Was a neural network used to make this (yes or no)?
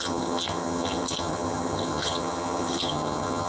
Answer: yes